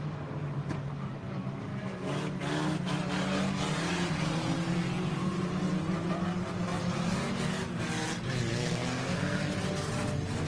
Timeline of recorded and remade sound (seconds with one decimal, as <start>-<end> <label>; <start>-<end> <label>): 0.0-8.5 recorded; 8.5-9.4 remade; 9.4-10.5 recorded